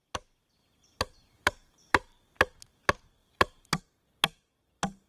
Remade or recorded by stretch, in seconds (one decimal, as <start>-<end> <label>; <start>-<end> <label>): 0.0-1.4 recorded; 1.4-2.1 remade; 2.1-3.2 recorded; 3.2-3.8 remade; 3.8-5.1 recorded